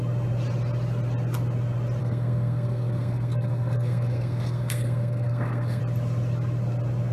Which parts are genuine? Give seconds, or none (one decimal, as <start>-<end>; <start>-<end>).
0.0-2.0; 5.8-7.1